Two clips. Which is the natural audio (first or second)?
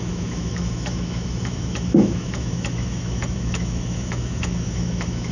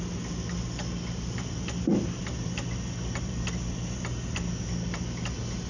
second